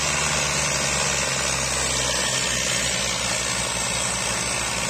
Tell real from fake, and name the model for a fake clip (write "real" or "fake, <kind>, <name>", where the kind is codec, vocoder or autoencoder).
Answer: real